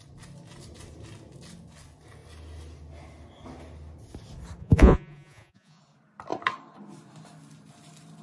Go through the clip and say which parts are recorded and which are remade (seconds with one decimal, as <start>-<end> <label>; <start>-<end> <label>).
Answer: 0.0-4.6 recorded; 4.6-5.8 remade; 5.8-8.2 recorded